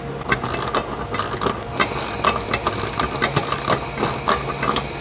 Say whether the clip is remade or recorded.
recorded